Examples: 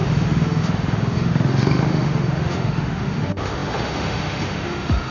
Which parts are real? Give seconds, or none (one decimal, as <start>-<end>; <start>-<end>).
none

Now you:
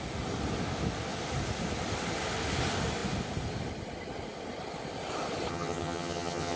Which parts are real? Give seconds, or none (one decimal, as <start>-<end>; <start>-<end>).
0.0-5.5

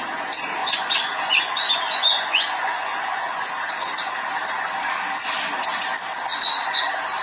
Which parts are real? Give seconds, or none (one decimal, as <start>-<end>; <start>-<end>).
0.0-0.6; 3.7-6.3; 6.8-7.2

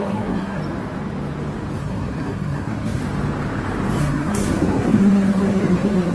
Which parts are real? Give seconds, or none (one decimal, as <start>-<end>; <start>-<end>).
0.6-1.8; 3.0-4.0

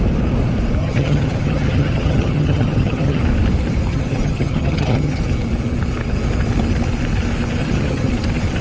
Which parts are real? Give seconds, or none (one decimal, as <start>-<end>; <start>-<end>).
0.0-0.8; 3.2-3.9; 5.2-7.6; 8.1-8.6

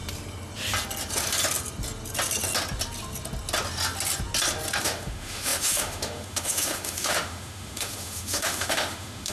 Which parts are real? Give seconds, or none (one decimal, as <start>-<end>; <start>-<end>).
0.0-4.8